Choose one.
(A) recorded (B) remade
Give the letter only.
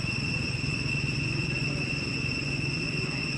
B